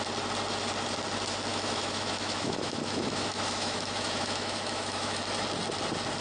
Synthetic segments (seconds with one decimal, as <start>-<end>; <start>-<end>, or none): 1.5-5.2